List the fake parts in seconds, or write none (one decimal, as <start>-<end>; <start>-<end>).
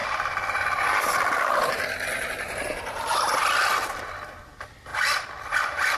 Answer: none